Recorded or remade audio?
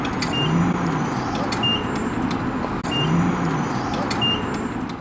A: recorded